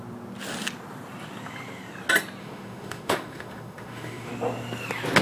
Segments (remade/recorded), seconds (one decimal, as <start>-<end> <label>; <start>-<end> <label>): 0.0-2.4 recorded; 2.4-4.3 remade; 4.3-5.2 recorded